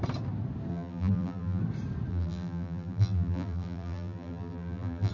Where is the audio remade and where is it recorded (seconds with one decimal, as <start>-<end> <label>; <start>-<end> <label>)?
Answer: 0.0-0.7 recorded; 0.7-1.6 remade; 1.6-2.1 recorded; 2.1-5.1 remade